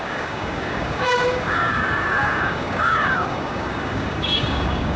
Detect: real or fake fake